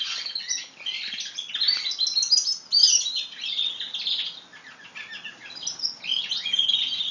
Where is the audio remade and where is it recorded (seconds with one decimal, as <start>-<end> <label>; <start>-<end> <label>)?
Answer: 0.0-7.1 recorded